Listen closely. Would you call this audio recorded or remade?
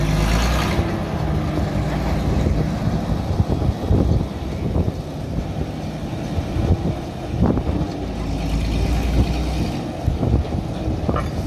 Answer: recorded